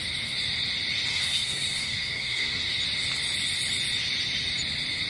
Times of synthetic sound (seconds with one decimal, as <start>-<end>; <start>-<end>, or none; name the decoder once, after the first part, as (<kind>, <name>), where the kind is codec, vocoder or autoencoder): 1.1-2.6 (codec, SNAC)